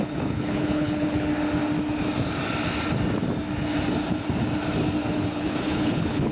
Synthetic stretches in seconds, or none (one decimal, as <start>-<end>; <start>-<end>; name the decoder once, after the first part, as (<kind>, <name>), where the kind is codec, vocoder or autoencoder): 0.0-1.3 (codec, HILCodec); 5.1-6.3